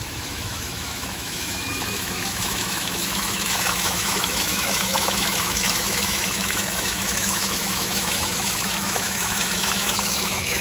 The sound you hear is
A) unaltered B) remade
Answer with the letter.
B